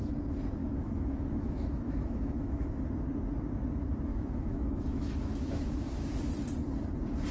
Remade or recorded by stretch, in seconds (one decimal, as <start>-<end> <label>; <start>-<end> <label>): 0.0-0.6 recorded; 0.6-2.7 remade; 2.7-4.1 recorded; 4.1-5.9 remade; 5.9-7.3 recorded